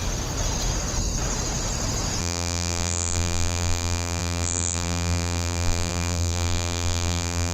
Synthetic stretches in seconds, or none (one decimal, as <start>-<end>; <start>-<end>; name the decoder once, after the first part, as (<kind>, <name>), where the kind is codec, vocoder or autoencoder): 2.2-7.5 (vocoder, BigVGAN v2)